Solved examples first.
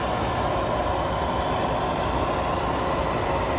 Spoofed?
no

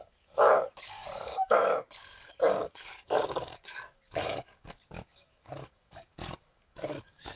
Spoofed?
yes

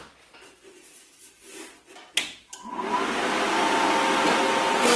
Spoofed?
no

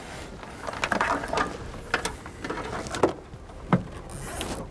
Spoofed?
no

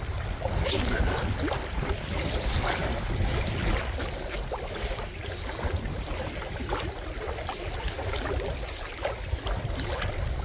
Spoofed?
no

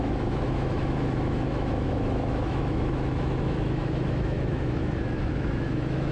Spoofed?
yes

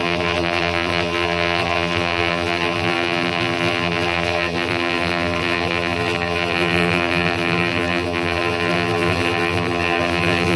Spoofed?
yes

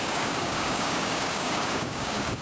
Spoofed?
yes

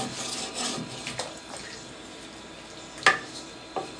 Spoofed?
no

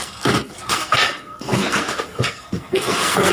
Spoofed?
yes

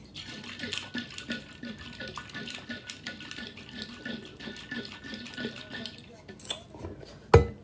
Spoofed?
no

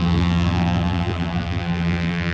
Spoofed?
yes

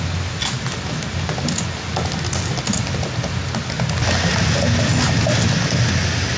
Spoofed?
no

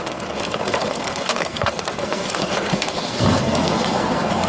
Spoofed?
yes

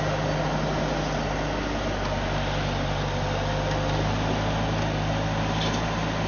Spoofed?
no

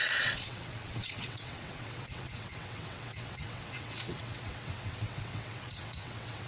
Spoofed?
yes